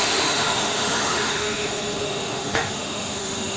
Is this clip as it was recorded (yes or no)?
no